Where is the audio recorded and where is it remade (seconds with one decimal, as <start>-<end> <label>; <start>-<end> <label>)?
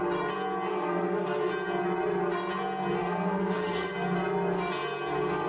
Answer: 0.0-0.7 recorded; 0.7-1.5 remade; 1.5-3.0 recorded; 3.0-3.9 remade; 3.9-5.5 recorded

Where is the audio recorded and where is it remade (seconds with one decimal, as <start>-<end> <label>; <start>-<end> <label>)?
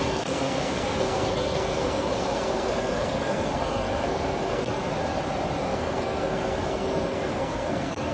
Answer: 0.0-4.9 remade; 4.9-5.6 recorded; 5.6-8.1 remade